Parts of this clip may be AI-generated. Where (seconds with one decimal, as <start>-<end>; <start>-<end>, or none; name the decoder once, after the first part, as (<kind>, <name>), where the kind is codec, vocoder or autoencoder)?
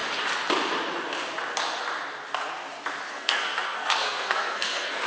3.1-5.1 (codec, SNAC)